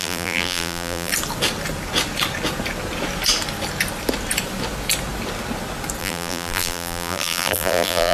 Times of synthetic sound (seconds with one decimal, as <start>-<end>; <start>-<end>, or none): 0.0-1.1; 6.0-8.1

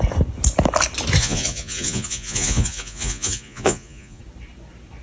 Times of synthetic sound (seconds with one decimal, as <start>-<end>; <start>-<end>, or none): 1.2-4.2

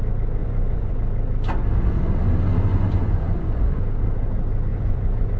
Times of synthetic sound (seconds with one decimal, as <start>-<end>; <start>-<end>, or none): 0.4-0.9; 2.7-3.8; 4.7-5.4

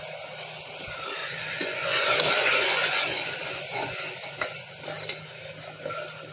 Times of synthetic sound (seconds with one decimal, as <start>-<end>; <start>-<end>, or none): 1.2-4.8

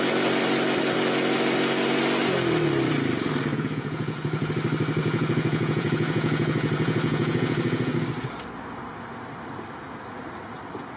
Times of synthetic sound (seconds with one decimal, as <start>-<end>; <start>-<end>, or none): 3.5-4.5; 5.0-7.9

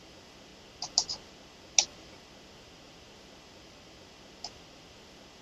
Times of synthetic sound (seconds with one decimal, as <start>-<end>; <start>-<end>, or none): none

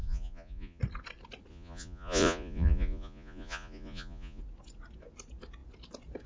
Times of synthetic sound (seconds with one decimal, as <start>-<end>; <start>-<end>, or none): 0.0-0.8; 1.5-4.4

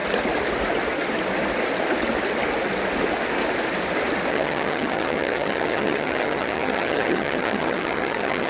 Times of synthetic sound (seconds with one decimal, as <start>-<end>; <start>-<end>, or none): 4.3-8.5